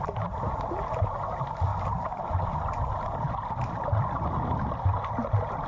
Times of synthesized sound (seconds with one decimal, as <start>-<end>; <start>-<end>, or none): 1.7-5.1

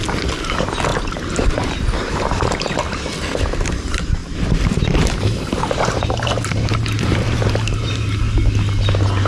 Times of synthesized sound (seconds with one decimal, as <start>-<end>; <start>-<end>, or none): 0.9-2.8; 4.2-8.2